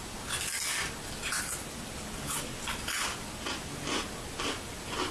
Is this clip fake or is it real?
real